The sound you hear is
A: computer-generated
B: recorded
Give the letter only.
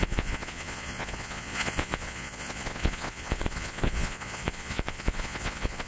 A